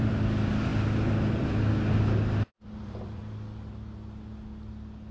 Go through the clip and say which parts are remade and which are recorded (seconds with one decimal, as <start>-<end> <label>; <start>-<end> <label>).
0.0-3.2 remade; 3.2-5.1 recorded